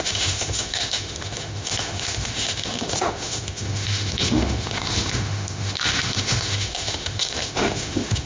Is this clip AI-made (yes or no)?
yes